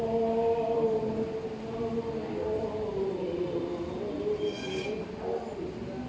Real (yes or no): yes